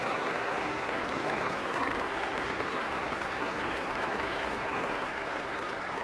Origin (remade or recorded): remade